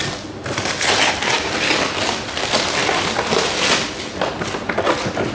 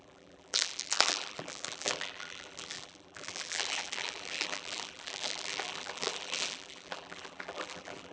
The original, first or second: first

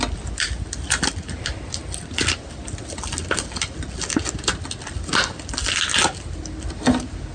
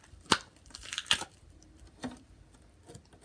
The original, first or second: first